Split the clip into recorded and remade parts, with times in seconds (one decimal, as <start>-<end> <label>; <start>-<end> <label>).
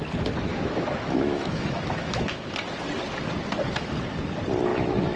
0.0-0.5 recorded; 0.5-2.5 remade; 2.5-4.7 recorded; 4.7-5.2 remade